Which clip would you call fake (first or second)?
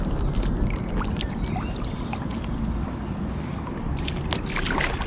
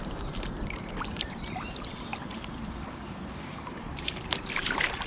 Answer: second